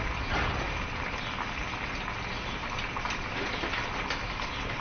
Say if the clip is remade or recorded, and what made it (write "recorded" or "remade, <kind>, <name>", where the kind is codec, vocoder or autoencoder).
recorded